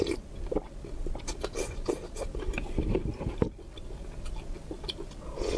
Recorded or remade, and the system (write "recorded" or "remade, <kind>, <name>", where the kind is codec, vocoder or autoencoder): recorded